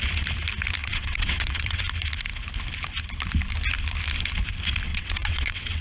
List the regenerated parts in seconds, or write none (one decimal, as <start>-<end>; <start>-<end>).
0.8-1.8; 4.9-5.8